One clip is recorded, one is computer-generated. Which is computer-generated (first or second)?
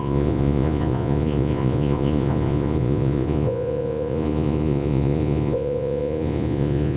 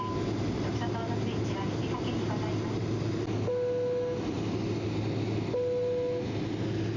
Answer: first